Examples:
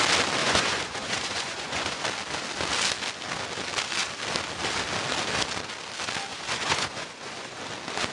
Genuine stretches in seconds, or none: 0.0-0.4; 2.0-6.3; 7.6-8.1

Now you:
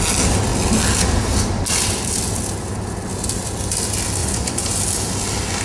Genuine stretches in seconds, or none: 0.0-4.2; 4.8-5.6

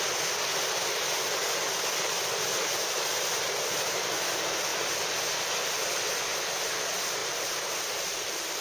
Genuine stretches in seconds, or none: 0.0-8.6

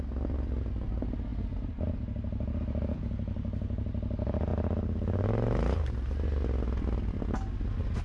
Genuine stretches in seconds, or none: 0.0-8.0

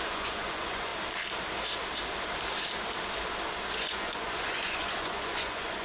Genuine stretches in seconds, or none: 0.9-3.7